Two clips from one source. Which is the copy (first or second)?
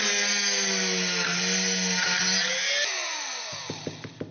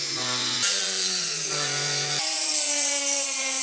second